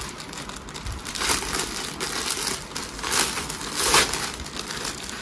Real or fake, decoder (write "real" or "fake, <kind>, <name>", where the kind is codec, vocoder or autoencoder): real